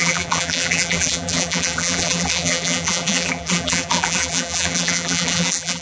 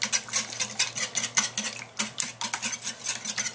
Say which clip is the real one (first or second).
second